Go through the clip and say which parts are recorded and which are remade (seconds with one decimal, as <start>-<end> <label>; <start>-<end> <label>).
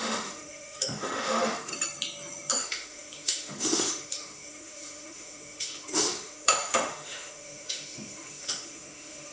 0.0-1.7 remade; 1.7-2.5 recorded; 2.5-9.3 remade